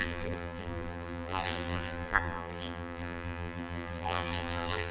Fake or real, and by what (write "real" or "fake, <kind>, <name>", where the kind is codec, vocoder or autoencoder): fake, vocoder, BigVGAN v2